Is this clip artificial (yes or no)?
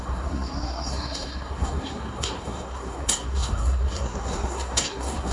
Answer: yes